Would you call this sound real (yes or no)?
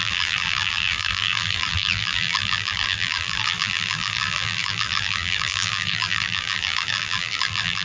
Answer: no